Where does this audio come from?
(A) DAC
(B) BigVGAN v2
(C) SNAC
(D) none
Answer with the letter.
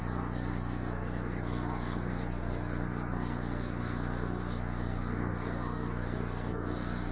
C